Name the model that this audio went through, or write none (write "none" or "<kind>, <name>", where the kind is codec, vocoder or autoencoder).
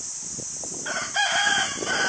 none